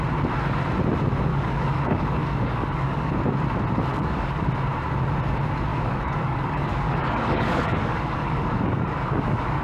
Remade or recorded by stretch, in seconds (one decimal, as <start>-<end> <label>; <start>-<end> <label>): 0.0-1.3 recorded; 1.3-3.1 remade; 3.1-3.9 recorded; 3.9-4.5 remade; 4.5-5.7 recorded; 5.7-9.6 remade